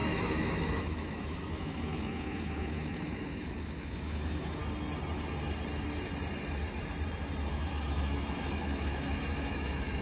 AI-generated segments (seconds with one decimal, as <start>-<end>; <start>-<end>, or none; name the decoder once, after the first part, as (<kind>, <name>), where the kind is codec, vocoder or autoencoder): 0.0-4.6 (autoencoder, DAC-VAE); 7.5-10.0